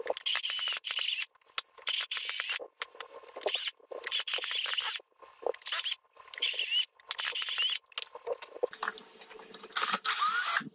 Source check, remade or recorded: recorded